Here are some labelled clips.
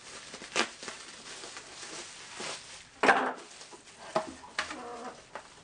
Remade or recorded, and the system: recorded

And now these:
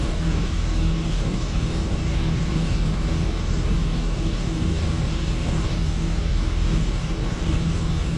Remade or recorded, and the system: remade, codec, DAC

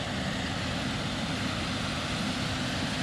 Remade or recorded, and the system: recorded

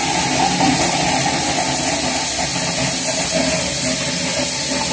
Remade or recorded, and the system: recorded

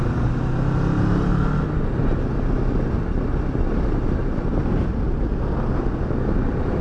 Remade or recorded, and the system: recorded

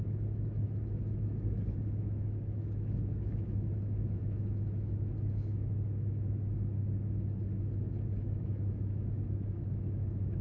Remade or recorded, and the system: remade, autoencoder, DAC-VAE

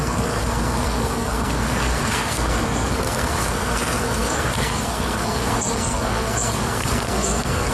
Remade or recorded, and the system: remade, codec, SNAC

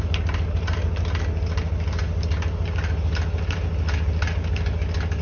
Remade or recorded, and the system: recorded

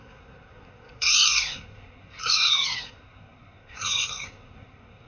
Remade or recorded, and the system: remade, codec, SNAC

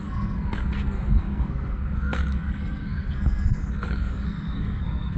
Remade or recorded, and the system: remade, codec, SNAC